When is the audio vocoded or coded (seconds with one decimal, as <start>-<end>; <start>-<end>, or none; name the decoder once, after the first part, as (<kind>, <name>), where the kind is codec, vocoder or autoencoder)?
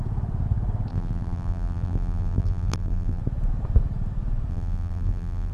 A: 0.9-3.2 (vocoder, BigVGAN v2); 4.5-5.5